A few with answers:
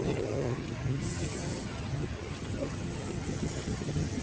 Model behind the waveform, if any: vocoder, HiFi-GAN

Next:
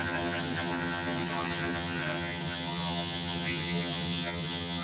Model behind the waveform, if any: vocoder, HiFi-GAN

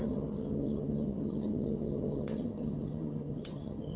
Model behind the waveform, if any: vocoder, HiFi-GAN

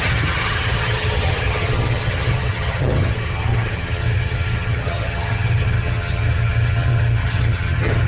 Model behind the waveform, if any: vocoder, HiFi-GAN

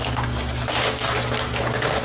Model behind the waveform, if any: none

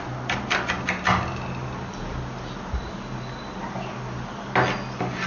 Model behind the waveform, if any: none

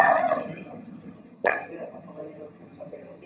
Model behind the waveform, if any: vocoder, HiFi-GAN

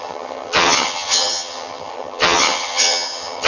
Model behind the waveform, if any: vocoder, HiFi-GAN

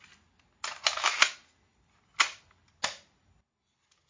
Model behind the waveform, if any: none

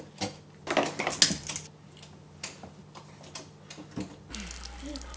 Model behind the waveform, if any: none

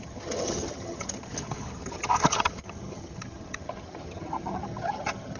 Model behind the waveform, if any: vocoder, HiFi-GAN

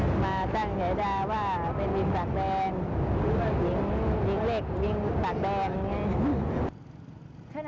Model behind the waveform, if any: none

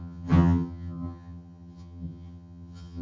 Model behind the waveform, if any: vocoder, HiFi-GAN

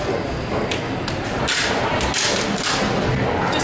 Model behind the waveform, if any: none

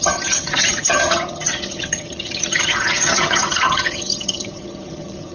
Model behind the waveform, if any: vocoder, HiFi-GAN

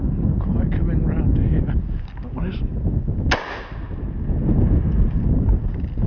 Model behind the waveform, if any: none